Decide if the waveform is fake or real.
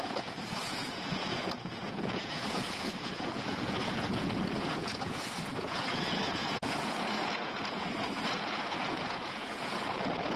fake